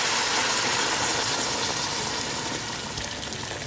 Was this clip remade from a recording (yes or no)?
no